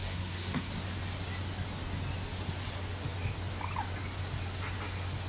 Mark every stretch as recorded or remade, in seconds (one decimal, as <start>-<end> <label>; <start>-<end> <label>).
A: 0.0-0.7 remade; 0.7-5.3 recorded